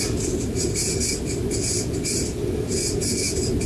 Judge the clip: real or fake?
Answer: real